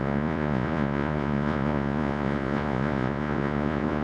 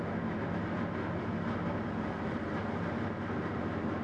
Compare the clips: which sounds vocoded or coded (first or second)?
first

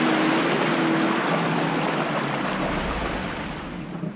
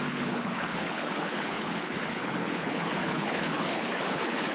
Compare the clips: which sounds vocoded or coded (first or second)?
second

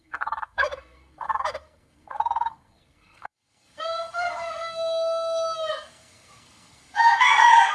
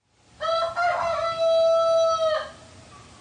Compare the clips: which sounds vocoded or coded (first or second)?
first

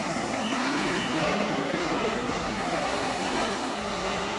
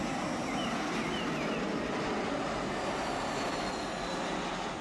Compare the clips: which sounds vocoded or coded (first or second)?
first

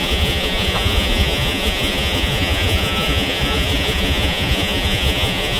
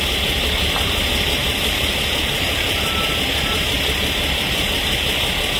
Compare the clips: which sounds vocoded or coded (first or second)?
first